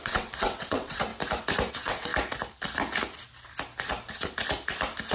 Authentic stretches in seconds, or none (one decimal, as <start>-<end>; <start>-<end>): 1.1-1.7; 2.1-5.1